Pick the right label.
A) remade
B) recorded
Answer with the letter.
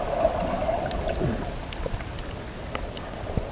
B